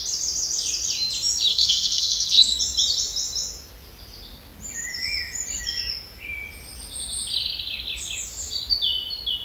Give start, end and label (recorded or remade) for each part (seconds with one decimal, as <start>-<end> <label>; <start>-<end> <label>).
0.0-1.5 recorded; 1.5-2.6 remade; 2.6-9.4 recorded